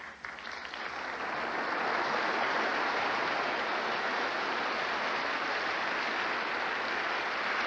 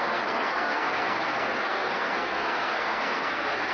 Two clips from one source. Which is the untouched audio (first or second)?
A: first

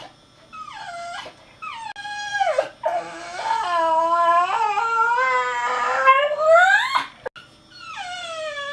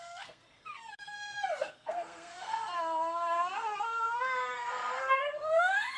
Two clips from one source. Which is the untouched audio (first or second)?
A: first